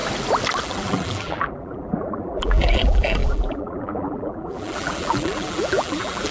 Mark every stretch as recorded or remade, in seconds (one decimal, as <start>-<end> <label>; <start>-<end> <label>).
0.0-0.6 recorded; 0.6-6.3 remade